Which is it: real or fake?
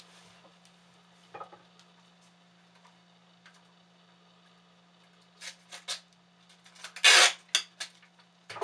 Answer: real